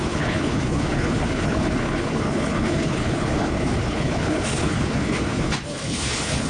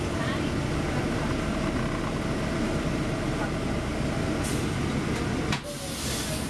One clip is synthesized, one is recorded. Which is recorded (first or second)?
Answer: second